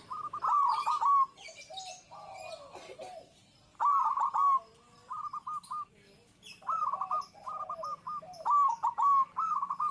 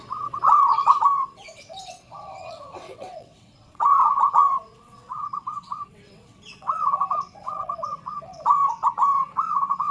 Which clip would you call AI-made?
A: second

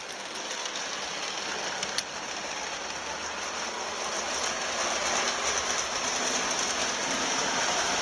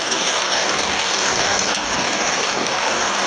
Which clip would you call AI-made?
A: second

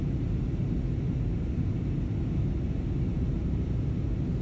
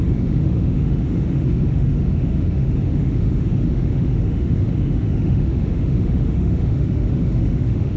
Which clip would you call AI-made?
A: second